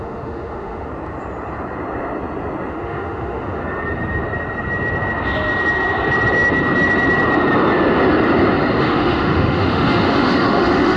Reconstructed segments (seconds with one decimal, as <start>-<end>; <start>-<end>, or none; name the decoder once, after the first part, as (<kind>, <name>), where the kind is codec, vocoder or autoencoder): 0.0-0.9 (autoencoder, DAC-VAE); 2.7-3.6; 8.8-11.0